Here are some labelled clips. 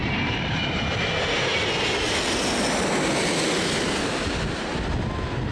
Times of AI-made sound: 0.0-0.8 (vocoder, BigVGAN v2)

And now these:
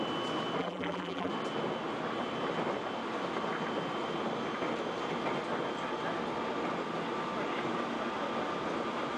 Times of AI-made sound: 0.6-1.3 (vocoder, BigVGAN v2)

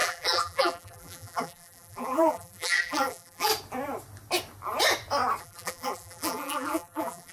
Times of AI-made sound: 0.0-3.5 (vocoder, BigVGAN v2); 5.4-7.3